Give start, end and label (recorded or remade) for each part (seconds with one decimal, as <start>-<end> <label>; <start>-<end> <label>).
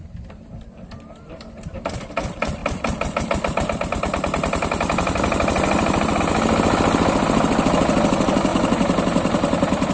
0.0-9.9 recorded